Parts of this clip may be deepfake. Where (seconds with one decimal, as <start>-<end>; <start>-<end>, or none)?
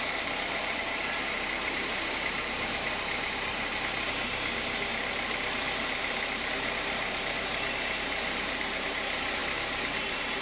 0.0-10.4